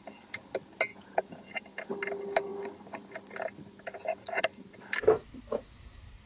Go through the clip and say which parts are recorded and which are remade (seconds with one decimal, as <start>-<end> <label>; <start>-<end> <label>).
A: 0.0-0.9 recorded; 0.9-1.5 remade; 1.5-6.3 recorded